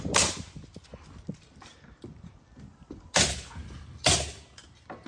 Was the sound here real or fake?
real